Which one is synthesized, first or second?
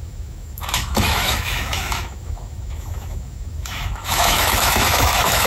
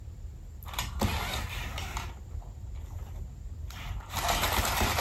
first